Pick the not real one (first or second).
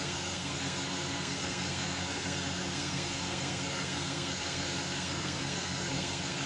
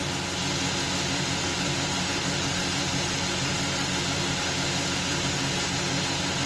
first